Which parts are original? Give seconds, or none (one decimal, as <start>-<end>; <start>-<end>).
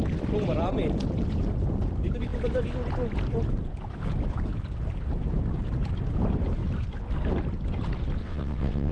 0.0-8.2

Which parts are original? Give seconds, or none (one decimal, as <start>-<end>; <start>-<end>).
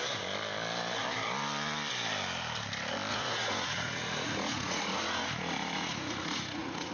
0.0-3.1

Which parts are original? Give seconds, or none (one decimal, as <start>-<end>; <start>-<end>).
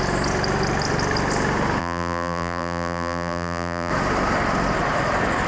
0.0-1.8; 3.9-5.5